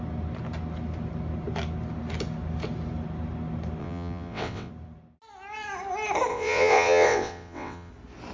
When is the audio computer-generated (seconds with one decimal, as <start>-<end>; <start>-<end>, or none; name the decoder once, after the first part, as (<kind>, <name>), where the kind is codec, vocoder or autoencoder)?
3.8-4.7 (vocoder, WaveNeXt); 6.3-7.9